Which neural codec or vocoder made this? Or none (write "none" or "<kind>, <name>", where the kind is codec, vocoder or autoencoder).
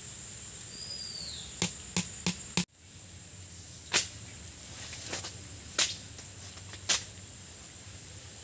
none